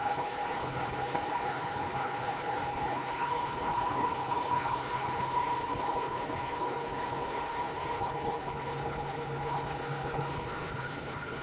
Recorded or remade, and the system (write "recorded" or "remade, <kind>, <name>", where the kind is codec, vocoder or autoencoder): remade, codec, HILCodec